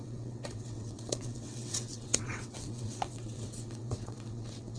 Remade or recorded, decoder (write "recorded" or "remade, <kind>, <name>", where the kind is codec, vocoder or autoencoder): remade, vocoder, WaveNeXt